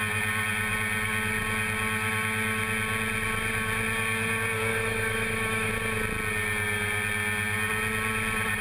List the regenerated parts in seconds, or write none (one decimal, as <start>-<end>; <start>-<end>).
4.7-5.7